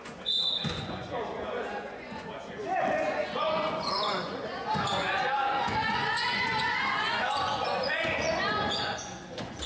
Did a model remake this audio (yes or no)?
yes